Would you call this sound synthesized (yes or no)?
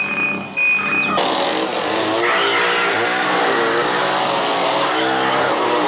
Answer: no